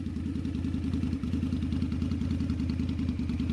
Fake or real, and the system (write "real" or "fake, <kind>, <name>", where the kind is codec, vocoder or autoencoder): real